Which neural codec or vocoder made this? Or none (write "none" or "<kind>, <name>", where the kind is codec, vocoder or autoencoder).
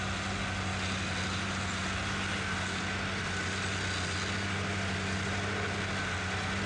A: none